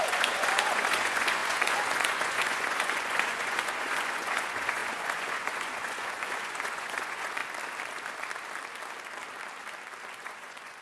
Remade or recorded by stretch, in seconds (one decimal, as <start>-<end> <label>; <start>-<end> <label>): 0.0-7.4 remade; 7.4-10.2 recorded; 10.2-10.8 remade

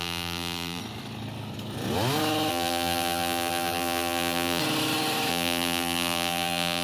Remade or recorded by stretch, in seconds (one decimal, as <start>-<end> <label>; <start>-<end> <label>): 0.0-0.8 remade; 0.8-2.5 recorded; 2.5-4.6 remade; 4.6-5.3 recorded; 5.3-6.8 remade

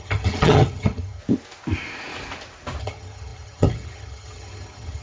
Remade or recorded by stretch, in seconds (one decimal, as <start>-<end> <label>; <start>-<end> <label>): 0.0-1.2 remade; 1.2-2.8 recorded; 2.8-5.0 remade

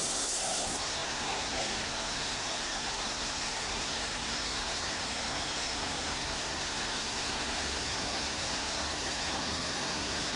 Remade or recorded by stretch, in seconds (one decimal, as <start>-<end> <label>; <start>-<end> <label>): 0.0-10.4 remade

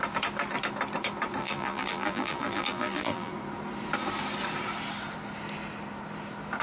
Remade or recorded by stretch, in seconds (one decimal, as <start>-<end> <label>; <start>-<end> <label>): 0.0-1.4 recorded; 1.4-3.3 remade; 3.3-6.6 recorded

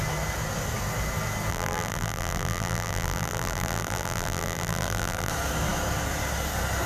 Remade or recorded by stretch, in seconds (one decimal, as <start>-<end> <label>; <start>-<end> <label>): 0.0-1.5 recorded; 1.5-5.3 remade; 5.3-6.9 recorded